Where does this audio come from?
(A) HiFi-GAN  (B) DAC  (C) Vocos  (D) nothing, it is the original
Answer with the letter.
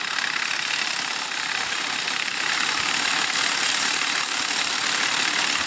D